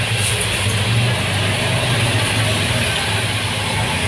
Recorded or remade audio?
recorded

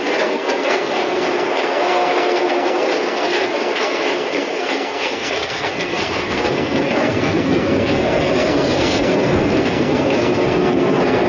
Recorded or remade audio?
remade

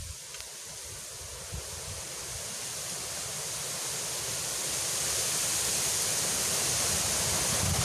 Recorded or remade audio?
recorded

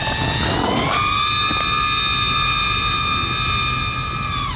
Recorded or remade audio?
recorded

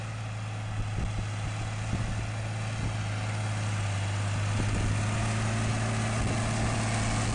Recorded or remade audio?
recorded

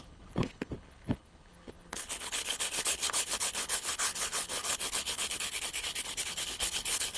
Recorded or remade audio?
remade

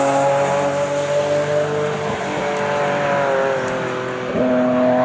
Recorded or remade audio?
recorded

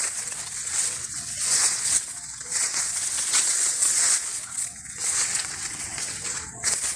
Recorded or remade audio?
remade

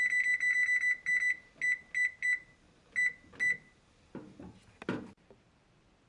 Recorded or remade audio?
recorded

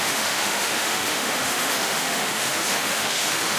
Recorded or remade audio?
remade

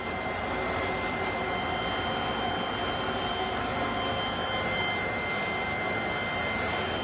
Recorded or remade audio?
recorded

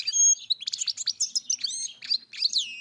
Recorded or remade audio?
recorded